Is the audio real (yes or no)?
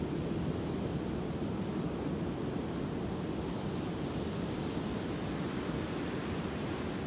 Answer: yes